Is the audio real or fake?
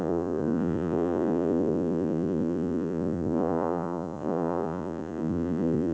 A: fake